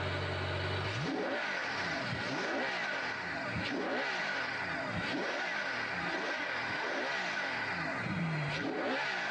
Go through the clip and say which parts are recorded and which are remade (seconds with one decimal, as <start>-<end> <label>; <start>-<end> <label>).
0.0-9.3 recorded